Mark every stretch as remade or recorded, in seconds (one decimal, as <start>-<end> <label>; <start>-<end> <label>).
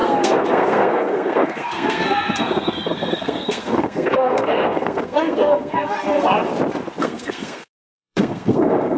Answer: 0.0-6.5 remade; 6.5-7.0 recorded; 7.0-9.0 remade